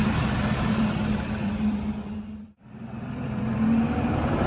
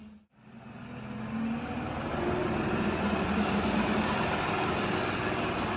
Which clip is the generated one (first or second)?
first